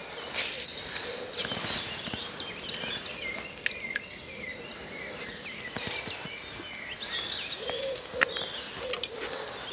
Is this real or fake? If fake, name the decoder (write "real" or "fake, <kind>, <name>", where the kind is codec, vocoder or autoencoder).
real